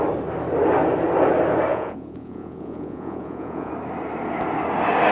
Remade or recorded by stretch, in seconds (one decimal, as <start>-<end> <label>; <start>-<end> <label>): 0.0-1.7 recorded; 1.7-3.7 remade; 3.7-5.1 recorded